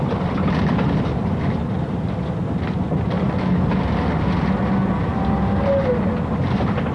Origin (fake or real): real